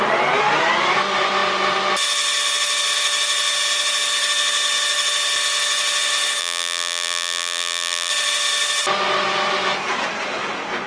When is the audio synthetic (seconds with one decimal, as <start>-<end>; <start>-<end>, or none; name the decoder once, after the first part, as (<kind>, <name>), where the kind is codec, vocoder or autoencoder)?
6.4-8.1 (vocoder, BigVGAN v2)